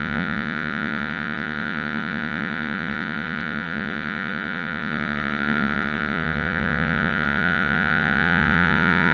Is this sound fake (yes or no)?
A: yes